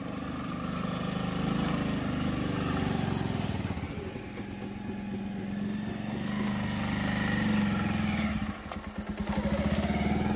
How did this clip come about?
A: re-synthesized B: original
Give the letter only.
B